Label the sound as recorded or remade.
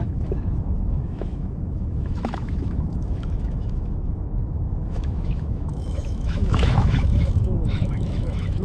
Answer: remade